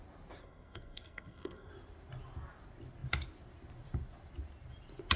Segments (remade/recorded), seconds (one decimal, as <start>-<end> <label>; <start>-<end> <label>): 0.0-0.4 recorded; 0.4-1.7 remade; 1.7-5.2 recorded